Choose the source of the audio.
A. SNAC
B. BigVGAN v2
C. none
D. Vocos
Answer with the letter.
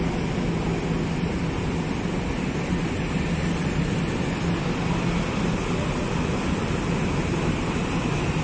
C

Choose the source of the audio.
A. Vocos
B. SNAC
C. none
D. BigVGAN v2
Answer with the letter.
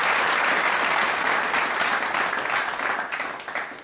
C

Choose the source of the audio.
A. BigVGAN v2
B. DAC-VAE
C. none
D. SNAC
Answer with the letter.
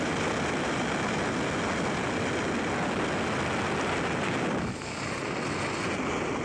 C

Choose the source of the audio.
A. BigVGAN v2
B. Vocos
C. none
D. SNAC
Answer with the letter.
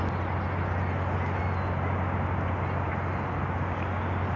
C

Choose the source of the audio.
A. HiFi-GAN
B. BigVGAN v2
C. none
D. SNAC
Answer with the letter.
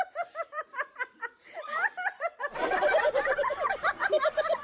B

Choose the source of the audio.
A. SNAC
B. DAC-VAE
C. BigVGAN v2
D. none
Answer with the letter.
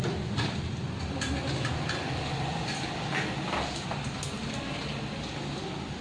D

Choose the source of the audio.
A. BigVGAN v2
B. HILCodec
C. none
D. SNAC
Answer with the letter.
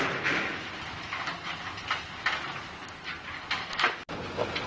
C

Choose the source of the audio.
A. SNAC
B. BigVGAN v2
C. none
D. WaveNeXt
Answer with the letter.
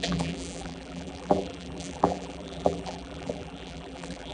B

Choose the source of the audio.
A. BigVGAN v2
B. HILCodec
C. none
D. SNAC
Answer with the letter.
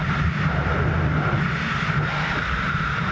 C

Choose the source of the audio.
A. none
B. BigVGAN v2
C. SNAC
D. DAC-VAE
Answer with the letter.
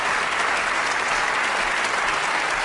A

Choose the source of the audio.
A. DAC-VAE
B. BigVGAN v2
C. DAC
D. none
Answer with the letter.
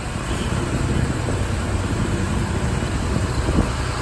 D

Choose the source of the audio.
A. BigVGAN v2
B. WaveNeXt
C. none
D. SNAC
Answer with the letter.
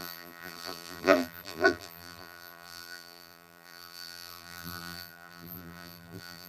A